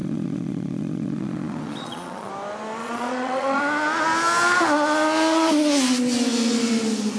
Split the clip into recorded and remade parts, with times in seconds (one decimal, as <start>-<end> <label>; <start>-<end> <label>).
0.0-2.3 remade; 2.3-2.8 recorded; 2.8-3.6 remade; 3.6-7.2 recorded